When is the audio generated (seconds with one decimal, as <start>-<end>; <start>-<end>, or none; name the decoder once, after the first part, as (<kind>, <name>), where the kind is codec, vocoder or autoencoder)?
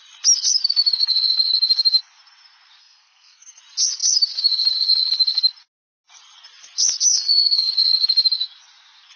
2.8-3.6 (codec, SNAC); 7.1-7.7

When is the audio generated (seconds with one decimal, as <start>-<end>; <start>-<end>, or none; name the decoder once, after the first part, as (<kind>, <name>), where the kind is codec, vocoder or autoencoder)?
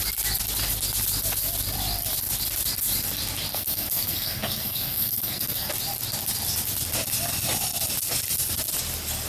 3.5-5.7 (codec, SNAC)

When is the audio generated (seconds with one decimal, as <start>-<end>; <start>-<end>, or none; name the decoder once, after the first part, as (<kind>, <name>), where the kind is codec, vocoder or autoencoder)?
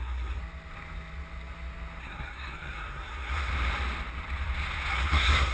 0.0-0.4 (codec, SNAC); 2.0-3.5; 4.9-5.5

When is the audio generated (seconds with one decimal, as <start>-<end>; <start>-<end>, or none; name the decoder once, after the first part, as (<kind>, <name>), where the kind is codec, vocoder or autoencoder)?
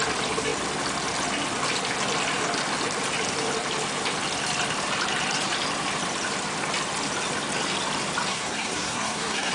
8.3-9.5 (codec, SNAC)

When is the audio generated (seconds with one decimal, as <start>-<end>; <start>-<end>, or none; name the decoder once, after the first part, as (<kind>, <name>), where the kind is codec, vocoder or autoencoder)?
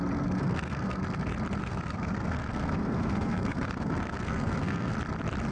0.4-1.0 (codec, SNAC); 1.6-4.9